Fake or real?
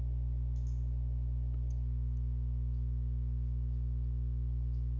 real